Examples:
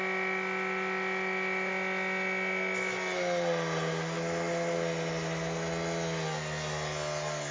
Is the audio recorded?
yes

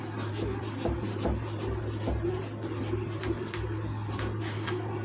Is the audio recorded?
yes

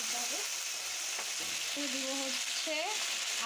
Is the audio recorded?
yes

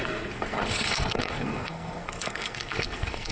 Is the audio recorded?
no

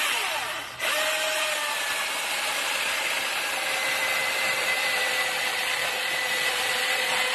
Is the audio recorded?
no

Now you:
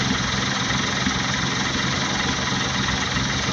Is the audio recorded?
yes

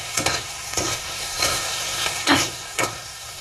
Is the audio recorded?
no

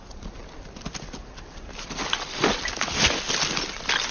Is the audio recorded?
yes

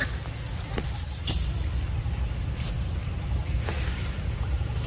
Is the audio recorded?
yes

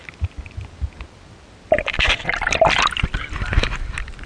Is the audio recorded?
yes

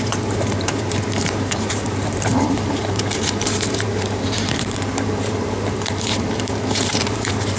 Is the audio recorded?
no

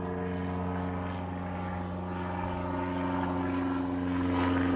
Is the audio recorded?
yes